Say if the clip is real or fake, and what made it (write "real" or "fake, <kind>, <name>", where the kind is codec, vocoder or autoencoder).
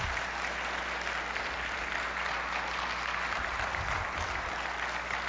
real